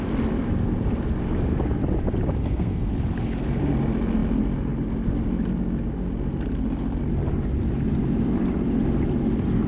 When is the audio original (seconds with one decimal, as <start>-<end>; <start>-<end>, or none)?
0.0-2.4; 2.9-9.7